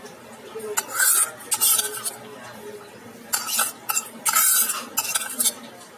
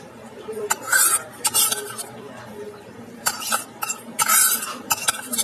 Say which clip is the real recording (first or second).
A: first